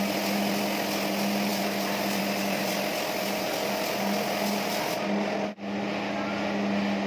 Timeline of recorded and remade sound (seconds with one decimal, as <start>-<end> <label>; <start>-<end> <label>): 0.0-1.5 recorded; 1.5-2.6 remade; 2.6-7.1 recorded